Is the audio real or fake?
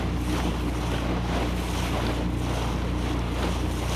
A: real